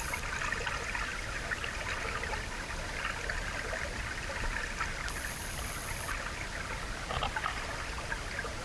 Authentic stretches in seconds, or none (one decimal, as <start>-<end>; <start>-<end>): 0.0-8.6